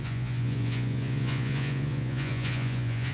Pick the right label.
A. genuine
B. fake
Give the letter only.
B